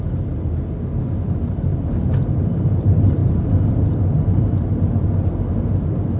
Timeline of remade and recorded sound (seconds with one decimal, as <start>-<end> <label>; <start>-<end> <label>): 0.0-6.2 recorded